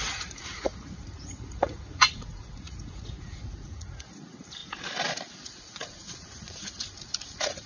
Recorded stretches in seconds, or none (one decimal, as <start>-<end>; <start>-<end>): 4.6-5.3